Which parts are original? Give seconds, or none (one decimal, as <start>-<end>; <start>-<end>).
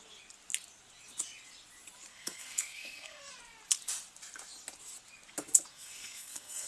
0.0-2.1; 3.3-5.7